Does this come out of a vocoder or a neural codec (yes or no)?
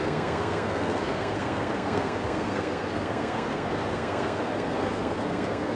yes